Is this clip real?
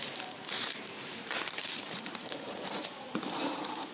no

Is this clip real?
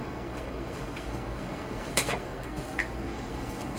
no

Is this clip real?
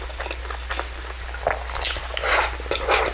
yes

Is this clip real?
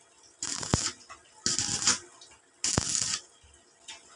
yes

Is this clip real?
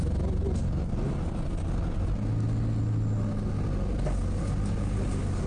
yes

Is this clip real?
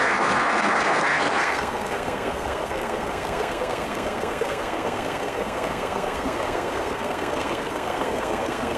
no